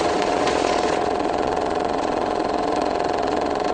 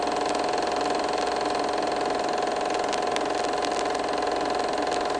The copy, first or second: first